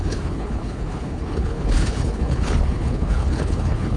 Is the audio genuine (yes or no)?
no